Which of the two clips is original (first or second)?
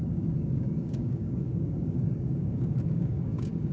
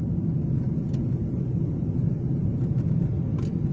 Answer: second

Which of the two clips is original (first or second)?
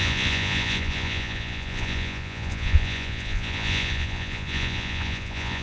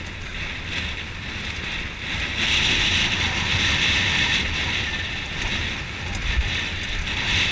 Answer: second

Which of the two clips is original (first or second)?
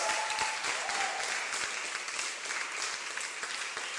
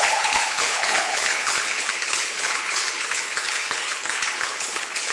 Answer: first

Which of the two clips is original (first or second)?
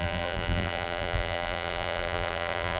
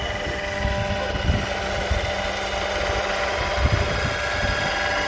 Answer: second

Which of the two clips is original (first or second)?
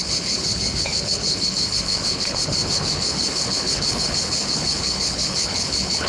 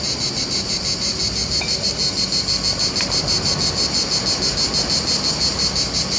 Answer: second